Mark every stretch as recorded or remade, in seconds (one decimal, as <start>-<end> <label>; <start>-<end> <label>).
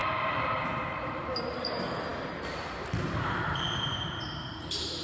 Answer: 0.0-5.0 remade